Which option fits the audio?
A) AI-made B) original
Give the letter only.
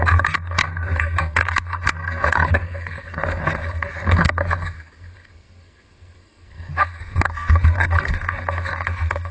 A